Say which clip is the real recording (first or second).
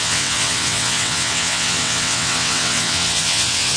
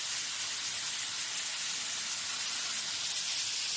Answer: second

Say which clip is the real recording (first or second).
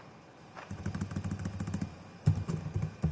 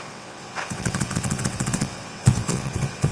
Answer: first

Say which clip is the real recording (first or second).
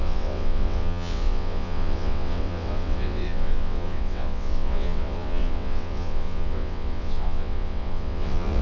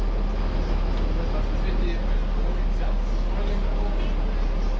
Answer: second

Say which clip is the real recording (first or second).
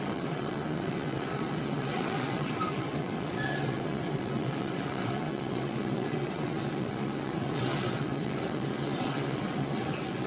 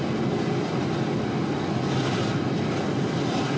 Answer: second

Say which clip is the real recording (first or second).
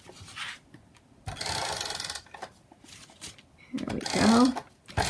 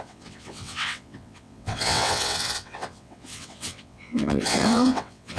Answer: first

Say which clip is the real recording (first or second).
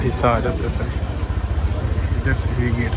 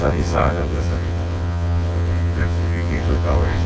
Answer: first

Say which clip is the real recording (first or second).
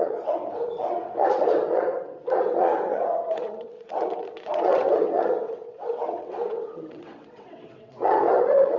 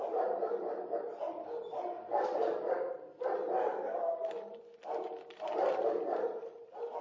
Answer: second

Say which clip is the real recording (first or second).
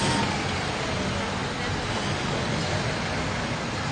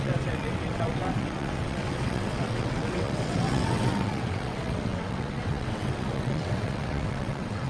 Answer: first